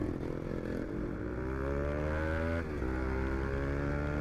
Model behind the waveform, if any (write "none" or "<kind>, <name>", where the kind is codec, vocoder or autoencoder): none